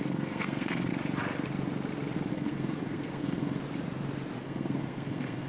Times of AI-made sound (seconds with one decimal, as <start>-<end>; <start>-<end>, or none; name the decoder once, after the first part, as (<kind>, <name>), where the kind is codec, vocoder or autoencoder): 0.0-0.9 (codec, SNAC); 2.3-3.6; 4.4-5.5